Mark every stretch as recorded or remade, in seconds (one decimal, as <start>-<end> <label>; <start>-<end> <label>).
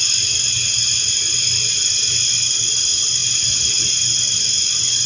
0.0-5.1 recorded